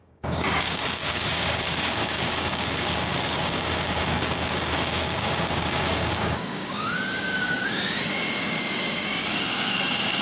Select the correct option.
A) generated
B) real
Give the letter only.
A